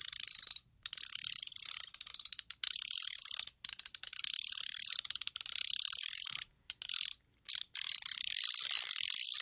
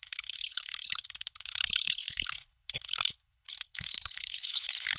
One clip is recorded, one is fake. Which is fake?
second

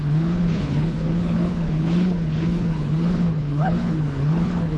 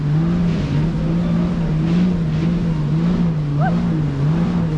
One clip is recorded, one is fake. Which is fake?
first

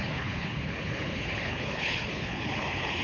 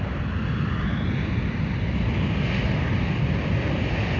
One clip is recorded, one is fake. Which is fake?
first